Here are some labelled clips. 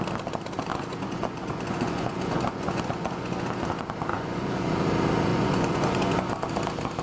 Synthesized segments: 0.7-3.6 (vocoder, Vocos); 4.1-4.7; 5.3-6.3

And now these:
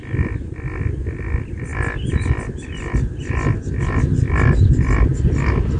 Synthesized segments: 5.1-5.8 (vocoder, BigVGAN v2)

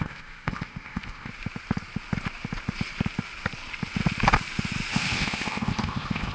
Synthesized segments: 0.0-1.3 (codec, ZipCodec); 4.9-6.3

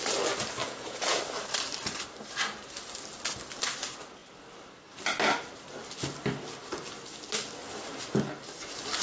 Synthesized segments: 0.6-1.2 (vocoder, Vocos)

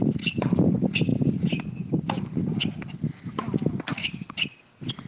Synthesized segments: none